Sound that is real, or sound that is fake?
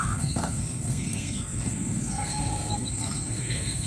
fake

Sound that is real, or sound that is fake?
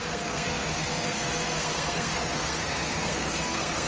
fake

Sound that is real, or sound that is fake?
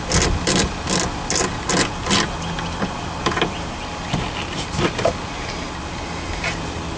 real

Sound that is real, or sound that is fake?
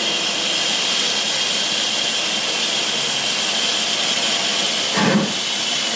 real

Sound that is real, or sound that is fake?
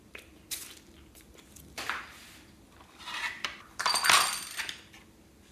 fake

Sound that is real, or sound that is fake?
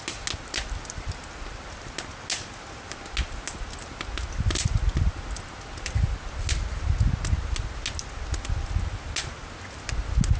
real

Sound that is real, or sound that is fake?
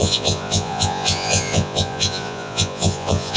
fake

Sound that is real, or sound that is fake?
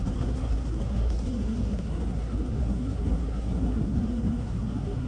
fake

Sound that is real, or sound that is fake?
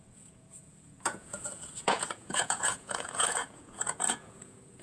fake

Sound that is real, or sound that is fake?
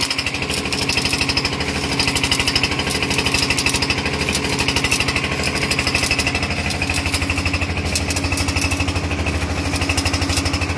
real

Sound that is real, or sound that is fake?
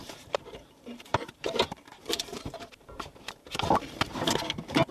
fake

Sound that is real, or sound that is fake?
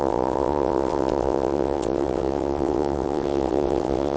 fake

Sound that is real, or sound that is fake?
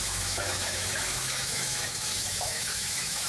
fake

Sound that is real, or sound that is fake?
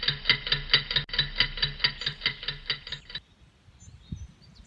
real